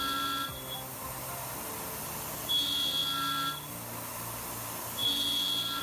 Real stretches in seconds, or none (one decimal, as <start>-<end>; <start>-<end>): 0.0-5.8